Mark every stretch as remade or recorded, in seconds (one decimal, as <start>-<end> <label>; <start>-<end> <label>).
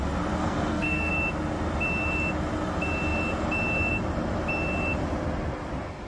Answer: 0.0-0.4 recorded; 0.4-1.1 remade; 1.1-6.1 recorded